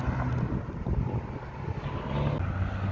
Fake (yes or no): no